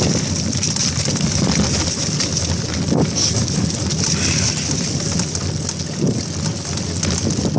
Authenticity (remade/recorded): recorded